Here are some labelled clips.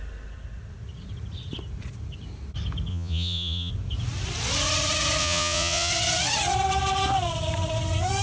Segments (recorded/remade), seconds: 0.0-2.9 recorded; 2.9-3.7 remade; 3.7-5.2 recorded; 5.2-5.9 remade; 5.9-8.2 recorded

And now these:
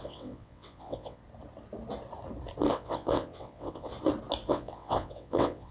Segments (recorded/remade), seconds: 0.0-1.2 remade; 1.2-2.7 recorded; 2.7-3.9 remade; 3.9-4.5 recorded; 4.5-5.7 remade

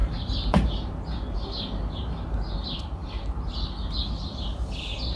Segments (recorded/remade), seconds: 0.0-0.8 remade; 0.8-5.2 recorded

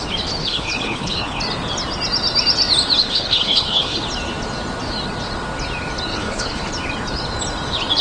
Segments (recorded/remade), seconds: 0.0-0.4 recorded; 0.4-1.4 remade; 1.4-3.0 recorded; 3.0-4.0 remade; 4.0-6.1 recorded; 6.1-6.7 remade; 6.7-8.0 recorded

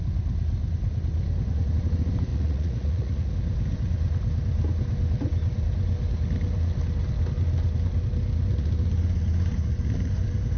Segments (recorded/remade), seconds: 0.0-2.3 recorded; 2.3-3.3 remade; 3.3-10.6 recorded

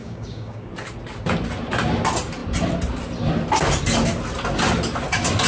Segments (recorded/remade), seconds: 0.0-0.7 remade; 0.7-5.5 recorded

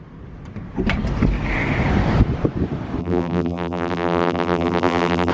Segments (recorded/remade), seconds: 0.0-3.0 recorded; 3.0-5.3 remade

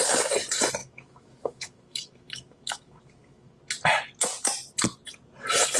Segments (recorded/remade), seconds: 0.0-0.8 recorded; 0.8-3.6 remade; 3.6-5.8 recorded